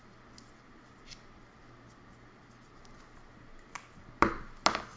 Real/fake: real